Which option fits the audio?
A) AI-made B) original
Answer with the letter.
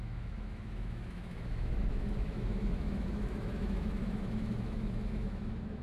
A